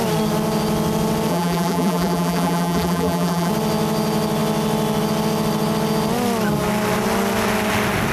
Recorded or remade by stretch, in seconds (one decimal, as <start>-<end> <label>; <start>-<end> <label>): 0.0-1.3 recorded; 1.3-3.5 remade; 3.5-8.1 recorded